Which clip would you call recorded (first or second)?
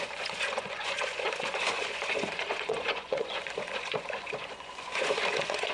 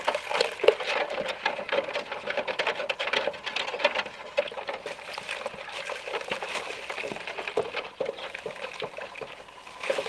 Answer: second